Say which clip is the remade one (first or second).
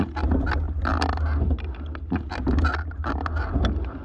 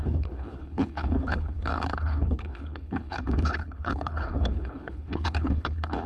second